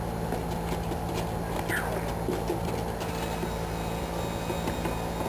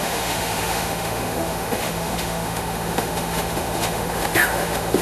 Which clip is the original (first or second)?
first